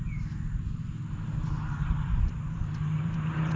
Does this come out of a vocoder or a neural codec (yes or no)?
yes